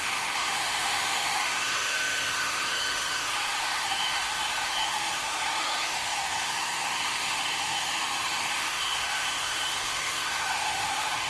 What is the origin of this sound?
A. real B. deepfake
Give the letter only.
B